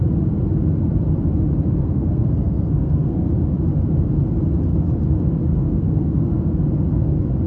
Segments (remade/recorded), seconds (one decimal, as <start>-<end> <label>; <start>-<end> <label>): 0.0-1.8 recorded; 1.8-3.3 remade; 3.3-5.5 recorded; 5.5-6.4 remade; 6.4-7.5 recorded